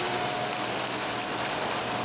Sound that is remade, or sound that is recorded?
recorded